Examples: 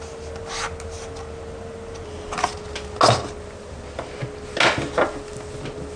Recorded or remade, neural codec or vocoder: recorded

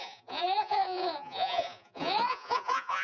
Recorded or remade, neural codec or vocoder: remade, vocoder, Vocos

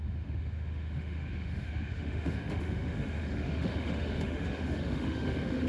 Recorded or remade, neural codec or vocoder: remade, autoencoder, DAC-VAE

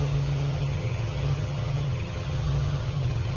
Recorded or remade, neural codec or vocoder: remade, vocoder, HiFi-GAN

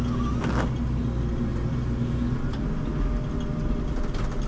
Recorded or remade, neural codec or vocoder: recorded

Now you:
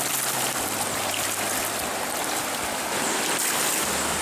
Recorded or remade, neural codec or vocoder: recorded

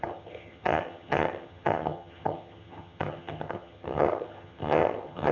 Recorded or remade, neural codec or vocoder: remade, vocoder, HiFi-GAN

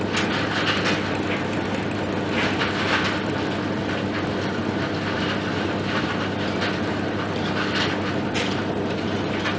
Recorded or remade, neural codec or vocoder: recorded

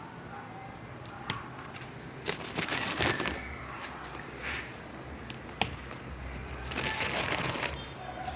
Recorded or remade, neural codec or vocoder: recorded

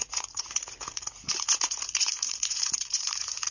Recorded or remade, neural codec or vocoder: remade, vocoder, Vocos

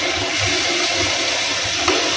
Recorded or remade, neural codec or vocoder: recorded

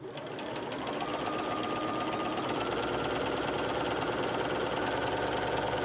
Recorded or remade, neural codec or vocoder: recorded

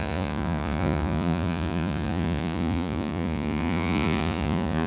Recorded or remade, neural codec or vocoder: remade, vocoder, Vocos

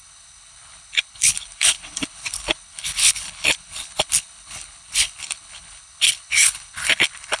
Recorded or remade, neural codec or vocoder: remade, codec, HILCodec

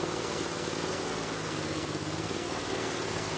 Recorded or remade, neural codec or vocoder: remade, codec, SNAC